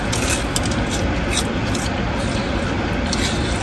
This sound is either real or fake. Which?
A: real